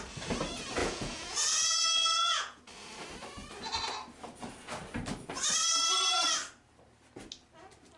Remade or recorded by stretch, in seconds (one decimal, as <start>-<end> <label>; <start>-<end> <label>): 0.0-0.8 recorded; 0.8-2.6 remade; 2.6-8.0 recorded